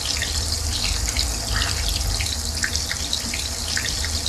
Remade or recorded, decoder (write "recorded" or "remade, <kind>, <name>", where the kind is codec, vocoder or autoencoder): recorded